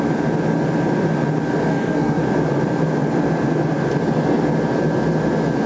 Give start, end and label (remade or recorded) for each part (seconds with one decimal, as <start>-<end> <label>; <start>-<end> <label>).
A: 0.0-1.7 recorded; 1.7-2.2 remade; 2.2-5.7 recorded